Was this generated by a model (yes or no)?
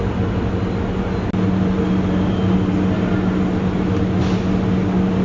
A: no